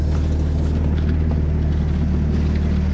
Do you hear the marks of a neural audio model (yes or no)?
no